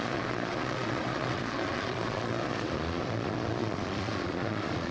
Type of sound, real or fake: fake